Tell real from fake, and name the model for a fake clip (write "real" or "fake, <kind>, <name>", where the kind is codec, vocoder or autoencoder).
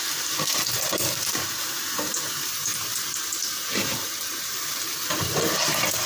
fake, vocoder, BigVGAN v2